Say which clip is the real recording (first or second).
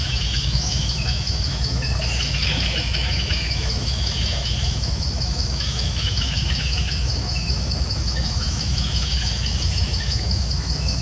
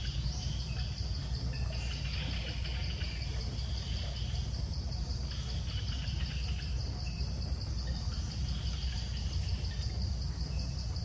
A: second